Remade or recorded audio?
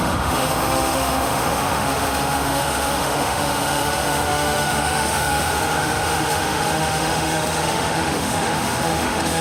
remade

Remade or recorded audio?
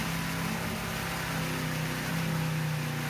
recorded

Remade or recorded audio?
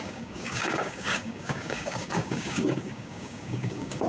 remade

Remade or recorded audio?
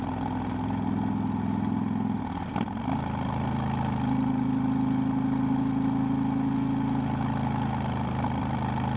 recorded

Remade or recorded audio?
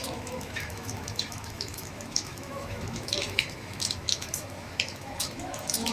remade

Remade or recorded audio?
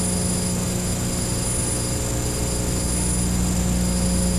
recorded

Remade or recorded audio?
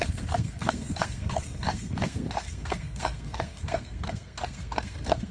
remade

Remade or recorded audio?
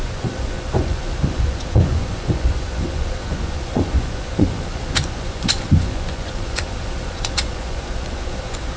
remade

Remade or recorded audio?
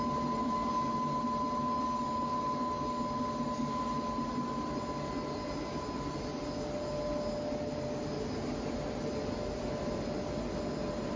recorded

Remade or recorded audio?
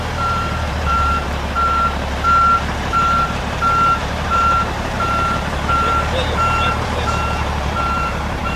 remade